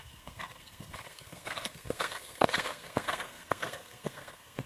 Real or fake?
fake